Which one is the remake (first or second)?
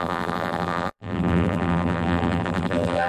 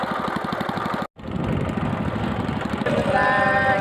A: first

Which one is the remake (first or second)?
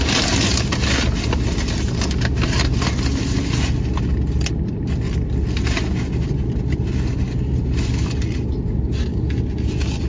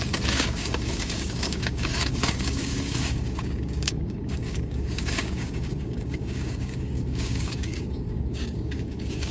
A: second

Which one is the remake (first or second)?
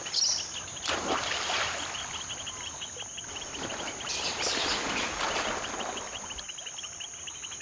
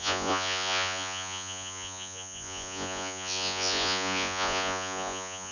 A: second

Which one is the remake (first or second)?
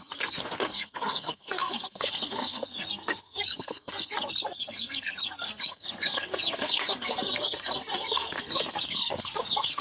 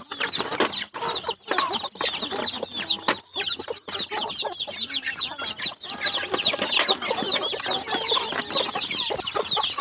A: first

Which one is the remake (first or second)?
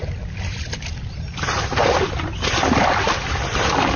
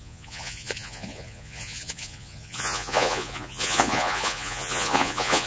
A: second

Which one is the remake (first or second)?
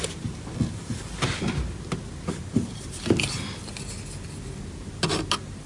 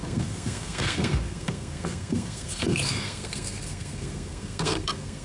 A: second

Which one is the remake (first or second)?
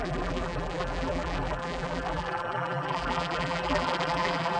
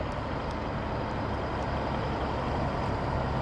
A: first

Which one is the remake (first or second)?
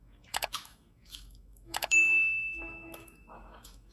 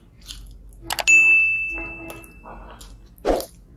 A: first